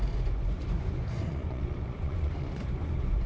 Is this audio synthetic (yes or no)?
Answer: yes